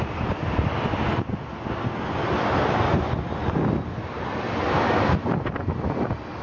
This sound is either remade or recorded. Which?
recorded